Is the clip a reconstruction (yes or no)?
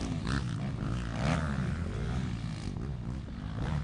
no